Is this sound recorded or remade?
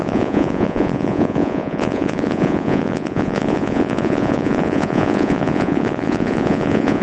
remade